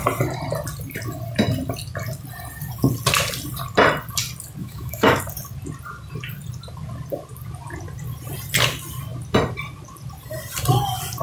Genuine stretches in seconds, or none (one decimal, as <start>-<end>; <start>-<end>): 0.0-4.6; 5.2-11.2